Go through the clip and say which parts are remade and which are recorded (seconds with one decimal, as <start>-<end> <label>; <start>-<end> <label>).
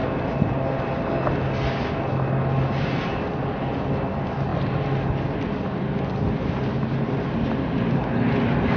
0.0-8.8 recorded